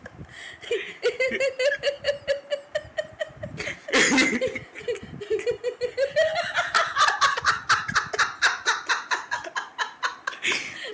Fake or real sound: real